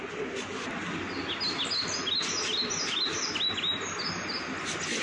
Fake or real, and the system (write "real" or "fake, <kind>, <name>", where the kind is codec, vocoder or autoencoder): real